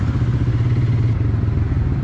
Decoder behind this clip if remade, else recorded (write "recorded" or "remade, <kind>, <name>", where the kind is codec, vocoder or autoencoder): recorded